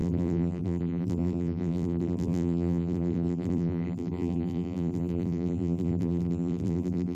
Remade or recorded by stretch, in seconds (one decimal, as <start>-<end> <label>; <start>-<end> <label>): 0.0-7.1 remade